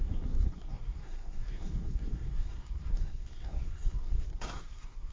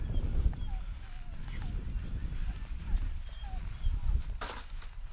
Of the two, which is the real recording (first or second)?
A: second